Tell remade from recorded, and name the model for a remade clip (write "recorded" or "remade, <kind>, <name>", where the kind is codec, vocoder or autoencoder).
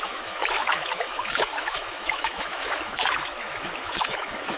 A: remade, autoencoder, DAC-VAE